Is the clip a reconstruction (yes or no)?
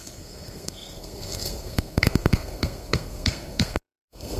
yes